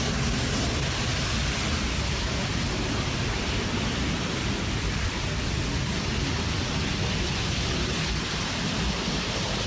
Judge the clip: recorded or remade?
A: recorded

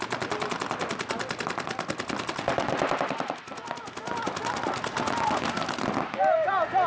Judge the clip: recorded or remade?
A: recorded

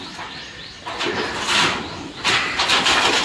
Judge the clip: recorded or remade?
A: recorded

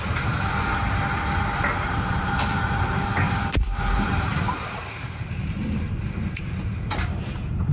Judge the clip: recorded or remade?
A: remade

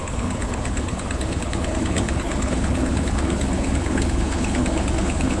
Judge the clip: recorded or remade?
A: remade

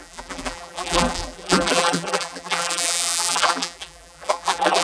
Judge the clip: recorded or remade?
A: remade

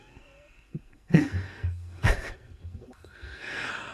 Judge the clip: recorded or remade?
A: remade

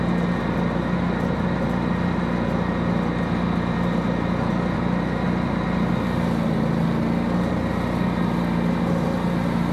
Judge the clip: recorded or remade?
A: recorded